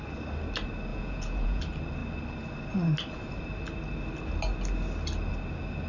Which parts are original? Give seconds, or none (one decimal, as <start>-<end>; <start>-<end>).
0.0-0.9; 1.6-5.9